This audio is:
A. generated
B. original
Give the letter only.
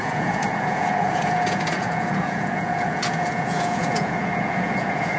A